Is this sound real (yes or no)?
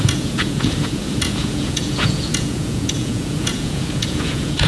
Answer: no